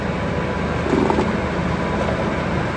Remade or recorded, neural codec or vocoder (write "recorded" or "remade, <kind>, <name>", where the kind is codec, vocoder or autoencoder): recorded